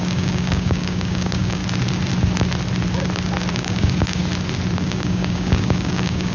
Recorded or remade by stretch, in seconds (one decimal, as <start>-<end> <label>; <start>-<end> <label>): 0.0-1.6 remade; 1.6-3.5 recorded; 3.5-4.2 remade; 4.2-4.8 recorded; 4.8-6.3 remade